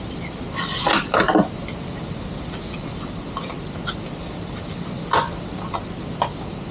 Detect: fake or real real